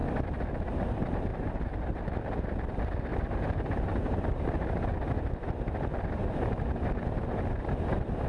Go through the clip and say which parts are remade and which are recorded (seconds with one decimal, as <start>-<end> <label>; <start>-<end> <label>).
0.0-1.3 recorded; 1.3-2.0 remade; 2.0-3.1 recorded; 3.1-4.4 remade; 4.4-6.2 recorded; 6.2-7.8 remade; 7.8-8.3 recorded